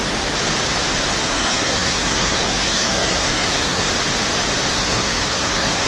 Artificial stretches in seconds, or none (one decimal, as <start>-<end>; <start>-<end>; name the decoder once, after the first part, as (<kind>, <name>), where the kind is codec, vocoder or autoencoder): 1.2-3.9 (codec, SNAC); 4.7-5.9